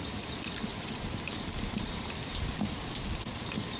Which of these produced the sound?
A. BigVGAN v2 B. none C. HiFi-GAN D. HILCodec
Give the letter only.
B